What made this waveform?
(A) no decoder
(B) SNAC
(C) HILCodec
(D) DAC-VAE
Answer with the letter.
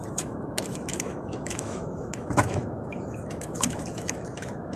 D